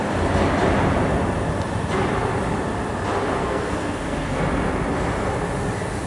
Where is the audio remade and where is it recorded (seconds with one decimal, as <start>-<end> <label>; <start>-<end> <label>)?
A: 0.0-3.4 recorded; 3.4-4.4 remade; 4.4-6.1 recorded